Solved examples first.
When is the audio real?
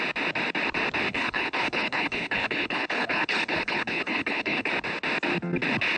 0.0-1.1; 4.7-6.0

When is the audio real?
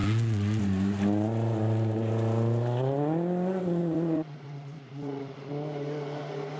0.6-3.8; 5.5-6.6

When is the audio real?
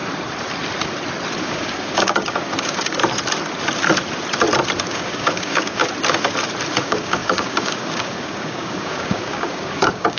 0.0-1.4; 3.1-4.9; 5.8-6.8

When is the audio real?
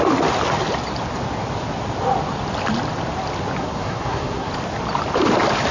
0.0-3.6; 4.5-5.7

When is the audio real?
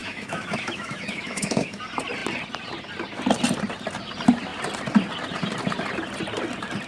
1.8-6.9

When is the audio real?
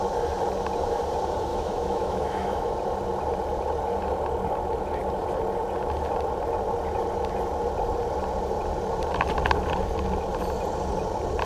0.0-1.5; 2.7-11.5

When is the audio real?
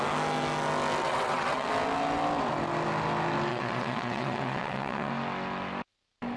0.0-1.0; 1.7-3.5; 5.1-6.4